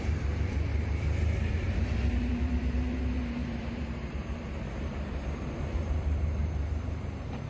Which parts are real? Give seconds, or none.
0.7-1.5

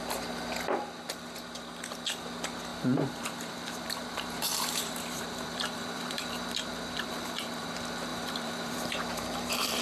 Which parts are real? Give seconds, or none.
0.0-2.7; 7.7-8.1